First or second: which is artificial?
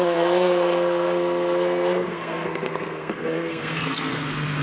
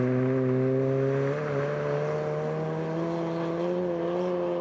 first